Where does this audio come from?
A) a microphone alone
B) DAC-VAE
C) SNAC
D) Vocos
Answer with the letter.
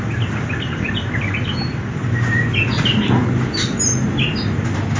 A